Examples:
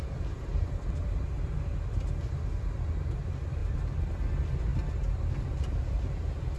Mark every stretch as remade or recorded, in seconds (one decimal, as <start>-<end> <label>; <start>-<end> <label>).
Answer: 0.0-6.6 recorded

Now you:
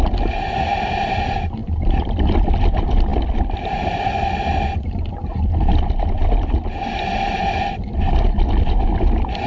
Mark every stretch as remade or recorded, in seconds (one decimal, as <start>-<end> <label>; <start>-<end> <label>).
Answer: 0.0-9.5 recorded

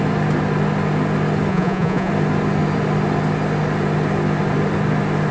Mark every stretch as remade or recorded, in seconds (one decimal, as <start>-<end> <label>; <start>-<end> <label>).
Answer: 0.0-1.5 recorded; 1.5-2.1 remade; 2.1-5.3 recorded